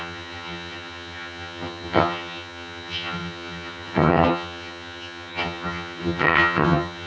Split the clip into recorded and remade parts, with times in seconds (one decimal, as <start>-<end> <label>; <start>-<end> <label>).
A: 0.0-7.1 remade